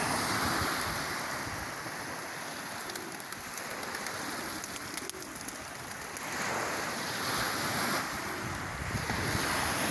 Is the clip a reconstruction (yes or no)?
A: no